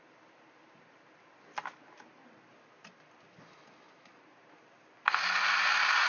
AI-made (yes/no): no